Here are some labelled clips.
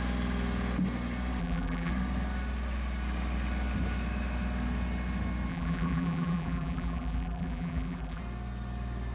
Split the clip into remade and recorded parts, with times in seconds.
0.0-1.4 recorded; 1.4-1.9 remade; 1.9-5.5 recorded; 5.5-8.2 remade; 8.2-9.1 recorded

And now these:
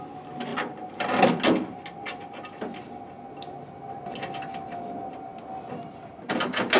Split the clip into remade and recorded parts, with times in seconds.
0.0-6.8 recorded

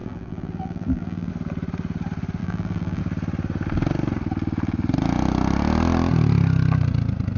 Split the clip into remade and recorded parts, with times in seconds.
0.0-1.3 remade; 1.3-2.4 recorded; 2.4-3.0 remade; 3.0-7.4 recorded